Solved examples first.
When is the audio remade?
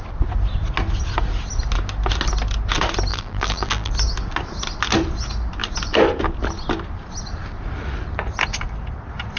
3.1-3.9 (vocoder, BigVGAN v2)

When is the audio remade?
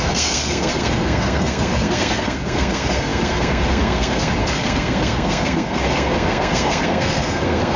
0.0-7.8 (codec, SNAC)